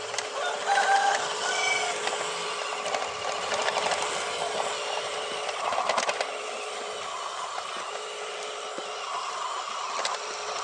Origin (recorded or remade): recorded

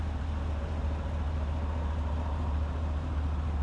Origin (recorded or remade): recorded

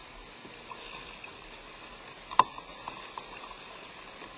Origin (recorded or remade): recorded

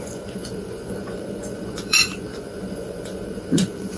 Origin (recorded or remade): remade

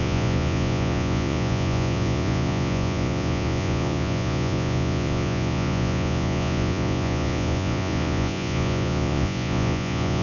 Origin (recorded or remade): remade